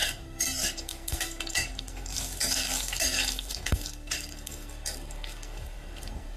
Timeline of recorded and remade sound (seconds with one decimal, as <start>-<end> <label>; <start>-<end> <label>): 0.0-6.4 remade